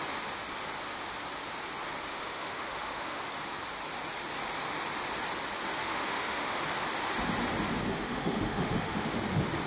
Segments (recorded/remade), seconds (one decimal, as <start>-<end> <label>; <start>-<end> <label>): 0.0-2.1 recorded; 2.1-3.2 remade; 3.2-5.8 recorded; 5.8-6.6 remade; 6.6-7.9 recorded; 7.9-9.1 remade; 9.1-9.7 recorded